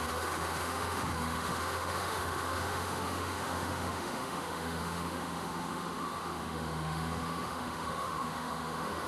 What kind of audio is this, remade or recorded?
remade